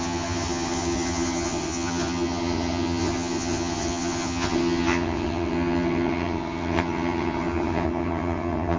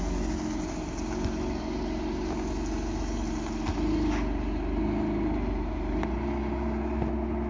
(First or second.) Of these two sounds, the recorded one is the second